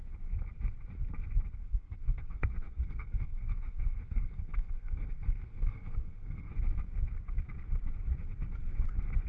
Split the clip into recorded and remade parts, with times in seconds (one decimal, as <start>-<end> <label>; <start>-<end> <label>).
0.0-1.6 recorded; 1.6-6.5 remade; 6.5-9.3 recorded